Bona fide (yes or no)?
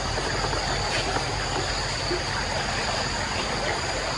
yes